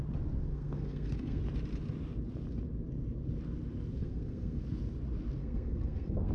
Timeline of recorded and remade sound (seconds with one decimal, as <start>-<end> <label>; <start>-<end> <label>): 0.0-0.5 recorded; 0.5-1.4 remade; 1.4-4.0 recorded; 4.0-4.6 remade; 4.6-5.4 recorded; 5.4-6.3 remade